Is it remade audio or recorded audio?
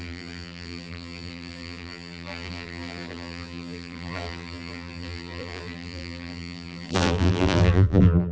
remade